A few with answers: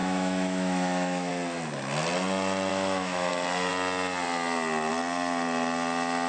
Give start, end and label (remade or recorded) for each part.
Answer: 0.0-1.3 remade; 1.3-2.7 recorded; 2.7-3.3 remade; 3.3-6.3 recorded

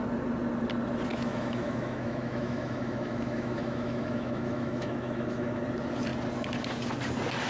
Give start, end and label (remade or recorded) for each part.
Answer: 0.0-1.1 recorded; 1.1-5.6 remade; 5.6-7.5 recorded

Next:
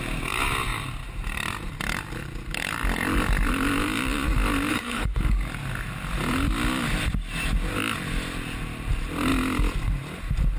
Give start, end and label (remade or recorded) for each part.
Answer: 0.0-4.7 recorded; 4.7-5.2 remade; 5.2-10.6 recorded

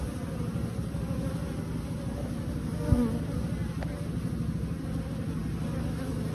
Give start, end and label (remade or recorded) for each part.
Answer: 0.0-6.3 recorded